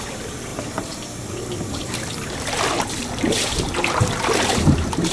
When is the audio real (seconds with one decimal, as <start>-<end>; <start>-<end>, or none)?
0.0-5.1